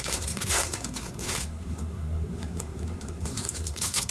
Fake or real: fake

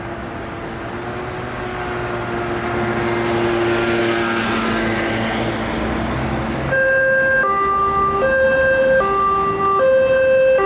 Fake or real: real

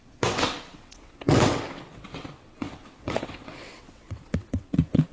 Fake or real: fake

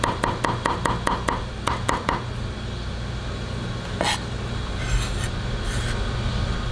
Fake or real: real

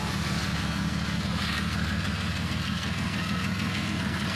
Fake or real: fake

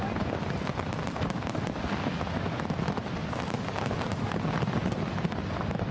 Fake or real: real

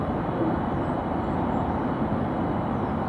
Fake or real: real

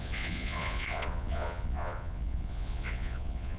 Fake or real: fake